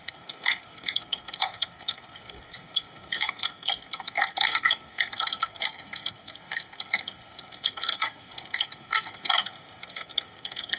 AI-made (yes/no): yes